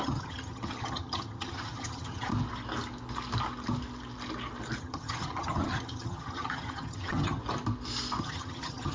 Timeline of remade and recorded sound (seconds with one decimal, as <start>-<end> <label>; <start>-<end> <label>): 0.0-2.3 remade; 2.3-4.8 recorded; 4.8-7.4 remade; 7.4-8.2 recorded; 8.2-8.9 remade